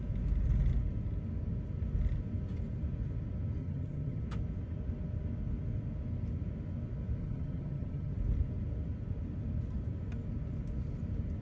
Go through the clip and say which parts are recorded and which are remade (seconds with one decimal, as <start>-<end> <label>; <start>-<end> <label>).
0.0-3.6 recorded; 3.6-4.2 remade; 4.2-7.2 recorded; 7.2-8.1 remade; 8.1-11.4 recorded